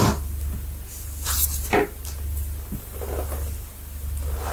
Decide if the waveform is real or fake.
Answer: real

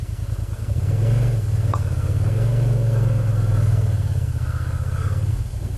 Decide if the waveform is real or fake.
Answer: fake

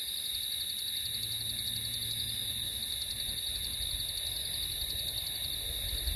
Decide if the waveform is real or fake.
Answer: real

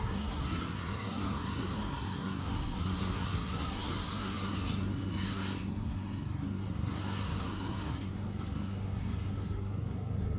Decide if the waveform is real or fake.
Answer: fake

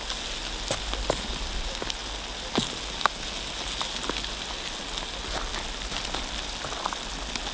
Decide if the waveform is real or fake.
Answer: real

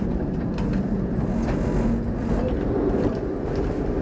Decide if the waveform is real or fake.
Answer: real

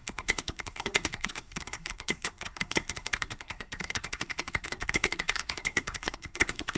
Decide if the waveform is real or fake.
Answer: fake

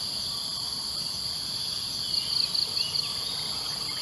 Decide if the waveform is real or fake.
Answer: real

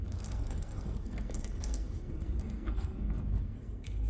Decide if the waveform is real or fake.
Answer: fake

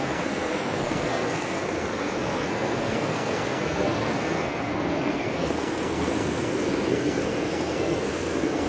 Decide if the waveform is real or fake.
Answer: fake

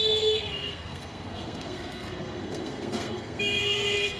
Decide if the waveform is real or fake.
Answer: fake